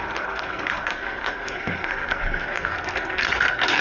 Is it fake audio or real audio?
fake